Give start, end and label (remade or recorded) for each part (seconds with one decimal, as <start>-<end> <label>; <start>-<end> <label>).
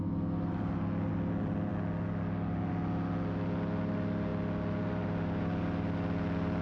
0.0-6.6 recorded